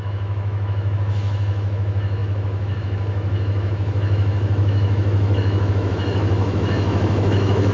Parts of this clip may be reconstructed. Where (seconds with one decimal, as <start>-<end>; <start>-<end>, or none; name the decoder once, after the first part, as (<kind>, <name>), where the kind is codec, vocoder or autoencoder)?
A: 0.0-7.7 (autoencoder, DAC-VAE)